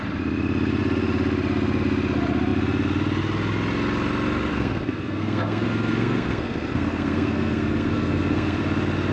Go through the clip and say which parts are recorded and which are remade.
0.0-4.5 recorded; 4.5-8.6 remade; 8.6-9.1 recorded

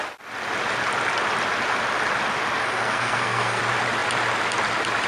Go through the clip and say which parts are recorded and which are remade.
0.0-2.6 recorded; 2.6-3.6 remade; 3.6-5.1 recorded

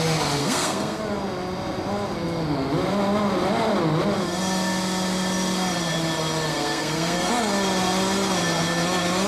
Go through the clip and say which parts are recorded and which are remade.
0.0-0.4 recorded; 0.4-1.0 remade; 1.0-6.5 recorded; 6.5-7.3 remade; 7.3-9.3 recorded

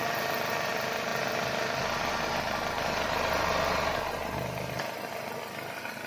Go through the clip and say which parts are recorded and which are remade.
0.0-6.1 recorded